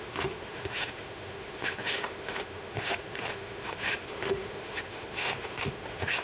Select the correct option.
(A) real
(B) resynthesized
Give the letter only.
B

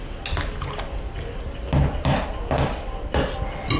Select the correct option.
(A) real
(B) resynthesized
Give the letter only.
A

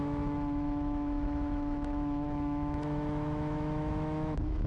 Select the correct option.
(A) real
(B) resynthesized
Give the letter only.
B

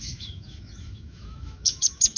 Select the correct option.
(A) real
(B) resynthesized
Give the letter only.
B